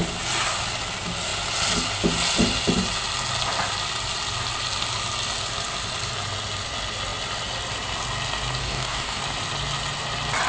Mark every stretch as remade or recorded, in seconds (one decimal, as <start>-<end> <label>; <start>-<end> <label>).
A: 0.0-8.6 recorded; 8.6-9.2 remade; 9.2-10.5 recorded